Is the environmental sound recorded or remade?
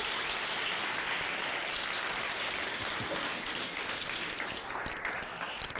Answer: recorded